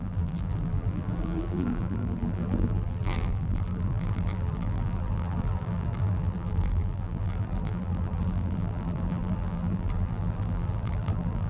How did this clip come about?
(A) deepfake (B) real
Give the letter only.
A